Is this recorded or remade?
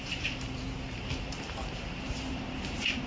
remade